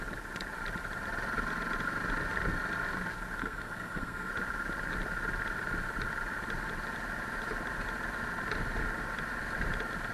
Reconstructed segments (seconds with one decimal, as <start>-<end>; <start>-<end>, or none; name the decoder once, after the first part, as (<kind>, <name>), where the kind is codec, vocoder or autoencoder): 3.4-4.3 (codec, SNAC)